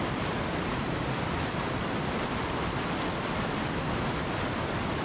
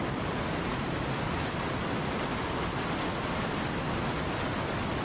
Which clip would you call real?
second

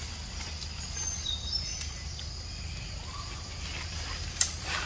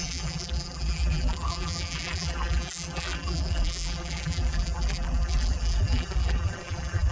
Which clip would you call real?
first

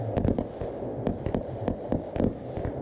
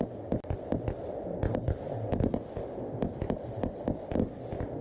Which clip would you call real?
first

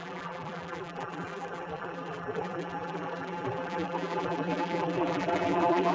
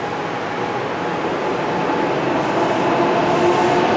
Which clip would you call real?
second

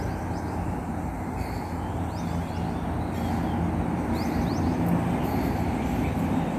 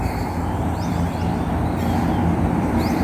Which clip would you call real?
first